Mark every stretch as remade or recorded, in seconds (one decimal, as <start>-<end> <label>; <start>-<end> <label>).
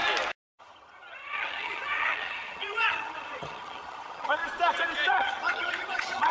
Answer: 0.0-0.6 recorded; 0.6-4.4 remade; 4.4-5.1 recorded; 5.1-6.3 remade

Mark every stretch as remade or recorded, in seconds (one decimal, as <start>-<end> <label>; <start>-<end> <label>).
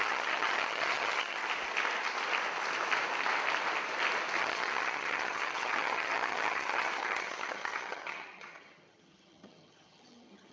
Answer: 0.0-1.4 remade; 1.4-4.4 recorded; 4.4-10.5 remade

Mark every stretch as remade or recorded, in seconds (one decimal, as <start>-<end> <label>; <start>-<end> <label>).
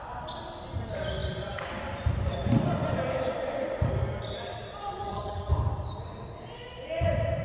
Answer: 0.0-5.0 recorded; 5.0-5.5 remade; 5.5-7.4 recorded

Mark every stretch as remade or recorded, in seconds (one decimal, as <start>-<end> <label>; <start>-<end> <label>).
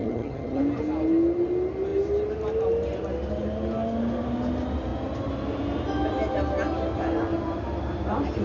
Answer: 0.0-0.6 remade; 0.6-8.4 recorded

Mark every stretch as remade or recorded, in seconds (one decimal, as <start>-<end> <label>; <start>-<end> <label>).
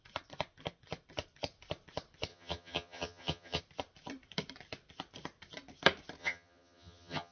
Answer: 0.0-2.3 recorded; 2.3-3.6 remade; 3.6-6.2 recorded; 6.2-7.3 remade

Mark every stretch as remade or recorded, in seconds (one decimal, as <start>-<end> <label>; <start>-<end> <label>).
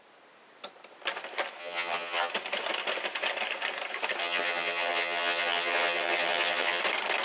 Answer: 0.0-1.6 recorded; 1.6-2.3 remade; 2.3-4.2 recorded; 4.2-6.8 remade; 6.8-7.2 recorded